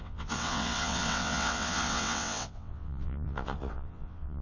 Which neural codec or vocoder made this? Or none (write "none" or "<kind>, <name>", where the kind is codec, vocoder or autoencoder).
vocoder, WaveNeXt